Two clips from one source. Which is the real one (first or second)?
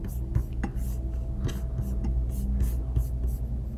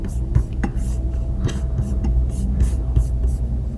first